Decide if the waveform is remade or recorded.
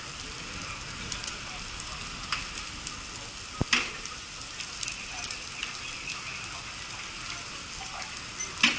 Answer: recorded